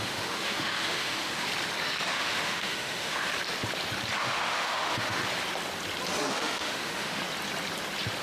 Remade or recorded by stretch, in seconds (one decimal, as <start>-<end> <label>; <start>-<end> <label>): 0.0-1.5 remade; 1.5-2.1 recorded; 2.1-3.3 remade; 3.3-4.2 recorded; 4.2-5.2 remade; 5.2-6.3 recorded; 6.3-7.2 remade; 7.2-8.2 recorded